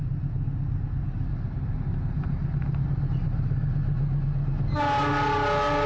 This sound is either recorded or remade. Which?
recorded